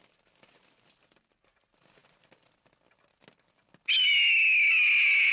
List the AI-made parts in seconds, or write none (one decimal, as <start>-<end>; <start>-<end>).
none